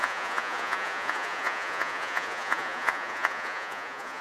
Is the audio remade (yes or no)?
yes